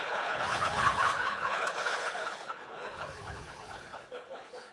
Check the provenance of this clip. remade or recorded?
remade